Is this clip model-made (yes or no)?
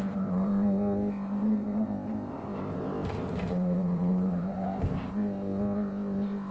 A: yes